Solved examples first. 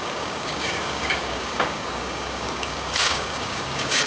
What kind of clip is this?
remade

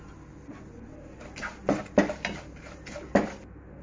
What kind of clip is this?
recorded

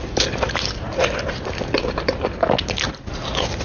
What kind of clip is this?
recorded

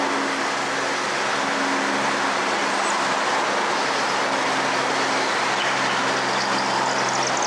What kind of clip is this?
recorded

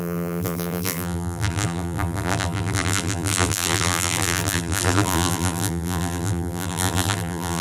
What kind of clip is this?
remade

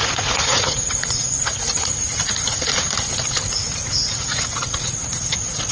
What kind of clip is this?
remade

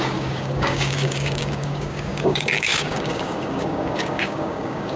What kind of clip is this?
remade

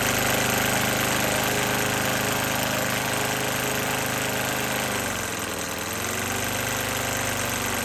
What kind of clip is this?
recorded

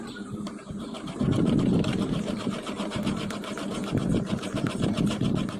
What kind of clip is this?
remade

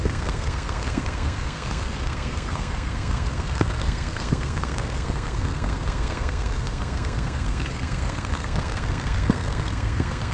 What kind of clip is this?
remade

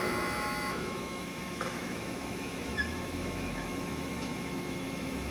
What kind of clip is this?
remade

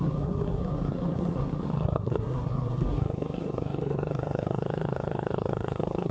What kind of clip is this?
remade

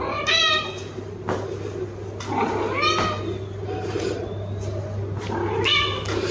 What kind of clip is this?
recorded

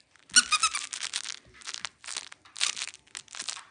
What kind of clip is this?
recorded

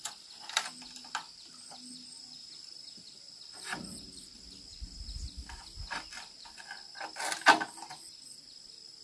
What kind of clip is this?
recorded